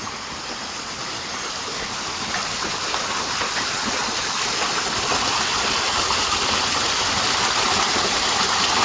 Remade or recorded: recorded